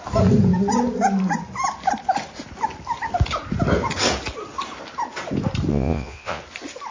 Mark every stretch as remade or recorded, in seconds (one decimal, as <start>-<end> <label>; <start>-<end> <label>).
0.0-5.7 recorded; 5.7-6.4 remade; 6.4-6.9 recorded